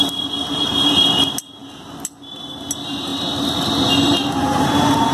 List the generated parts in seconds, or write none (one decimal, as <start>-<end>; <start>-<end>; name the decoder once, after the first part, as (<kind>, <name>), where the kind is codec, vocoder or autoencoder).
none